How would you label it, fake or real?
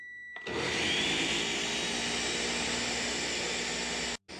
real